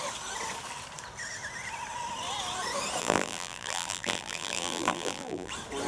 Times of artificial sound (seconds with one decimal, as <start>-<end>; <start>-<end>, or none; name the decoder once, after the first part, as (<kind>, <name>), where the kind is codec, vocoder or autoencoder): 3.0-5.5 (vocoder, BigVGAN v2)